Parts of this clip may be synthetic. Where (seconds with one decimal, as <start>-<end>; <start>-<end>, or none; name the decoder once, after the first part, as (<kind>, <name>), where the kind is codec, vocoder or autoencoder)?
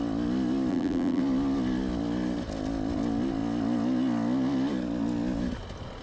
0.7-1.2 (vocoder, BigVGAN v2)